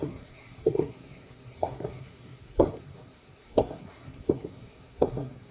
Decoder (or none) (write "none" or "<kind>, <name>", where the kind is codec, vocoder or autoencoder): codec, SNAC